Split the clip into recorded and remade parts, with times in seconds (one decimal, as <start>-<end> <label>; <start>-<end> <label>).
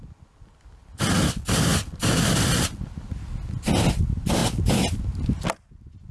0.0-6.1 recorded